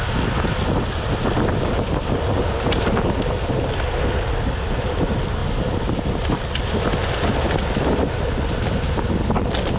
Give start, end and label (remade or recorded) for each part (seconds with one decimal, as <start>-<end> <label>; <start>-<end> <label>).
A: 0.0-9.8 recorded